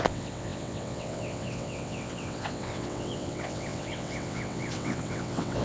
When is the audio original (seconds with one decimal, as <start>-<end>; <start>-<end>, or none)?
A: none